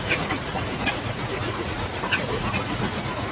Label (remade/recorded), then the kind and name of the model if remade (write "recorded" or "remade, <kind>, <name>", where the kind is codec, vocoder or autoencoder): remade, vocoder, Vocos